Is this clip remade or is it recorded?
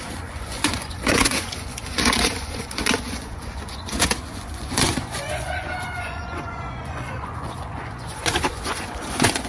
remade